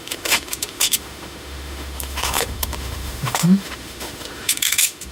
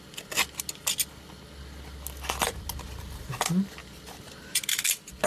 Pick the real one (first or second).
second